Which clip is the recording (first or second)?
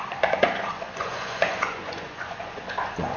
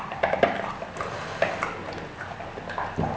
second